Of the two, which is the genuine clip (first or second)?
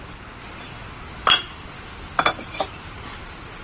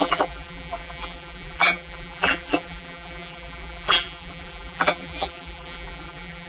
first